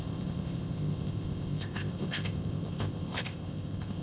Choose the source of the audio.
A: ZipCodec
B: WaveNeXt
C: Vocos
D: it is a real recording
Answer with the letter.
A